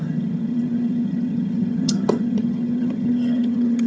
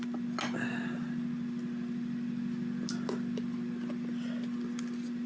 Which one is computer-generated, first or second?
first